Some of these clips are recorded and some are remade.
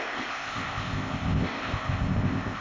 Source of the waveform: remade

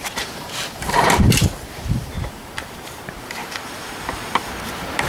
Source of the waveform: remade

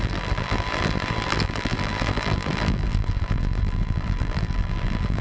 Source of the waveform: remade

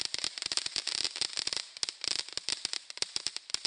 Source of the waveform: recorded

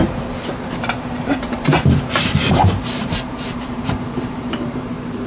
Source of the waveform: remade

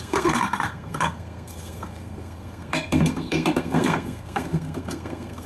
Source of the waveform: remade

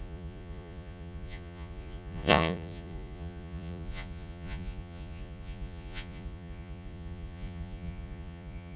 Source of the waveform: remade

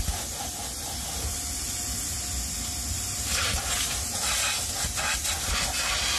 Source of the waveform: recorded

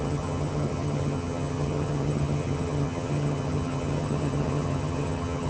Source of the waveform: remade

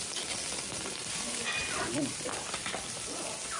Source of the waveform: recorded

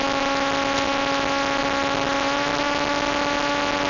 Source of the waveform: recorded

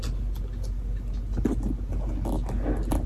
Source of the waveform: recorded